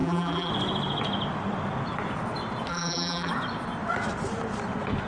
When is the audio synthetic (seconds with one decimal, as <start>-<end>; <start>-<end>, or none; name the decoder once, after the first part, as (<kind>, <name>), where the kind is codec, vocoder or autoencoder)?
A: 0.0-0.5 (vocoder, BigVGAN v2); 2.7-3.3